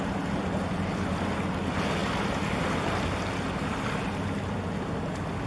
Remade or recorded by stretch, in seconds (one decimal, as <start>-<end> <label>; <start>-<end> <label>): 0.0-5.5 recorded